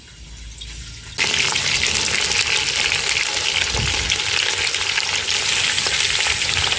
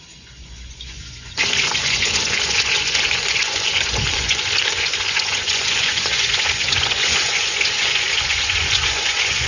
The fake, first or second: second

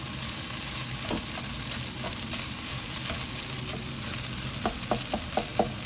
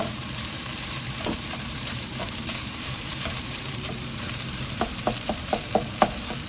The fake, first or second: second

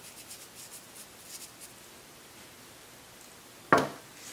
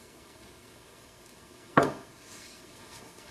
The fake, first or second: second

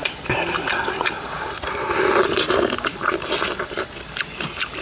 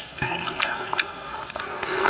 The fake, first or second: second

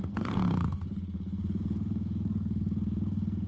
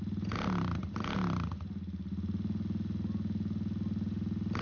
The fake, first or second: first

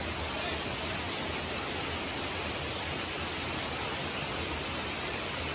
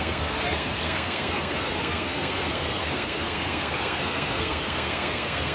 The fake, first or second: second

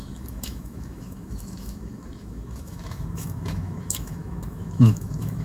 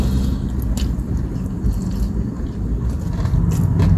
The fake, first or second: first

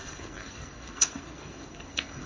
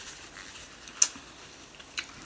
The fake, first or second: first